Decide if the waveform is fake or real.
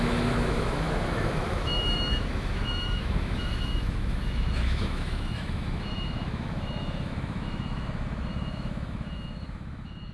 fake